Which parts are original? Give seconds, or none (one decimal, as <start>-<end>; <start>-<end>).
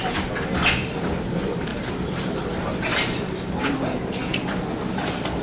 0.0-2.9; 3.5-5.4